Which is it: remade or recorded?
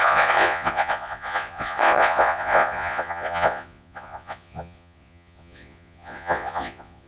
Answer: remade